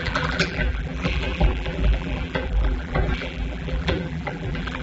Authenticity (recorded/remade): remade